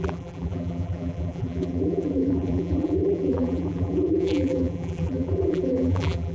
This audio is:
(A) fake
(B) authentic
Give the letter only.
A